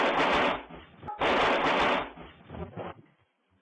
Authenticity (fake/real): real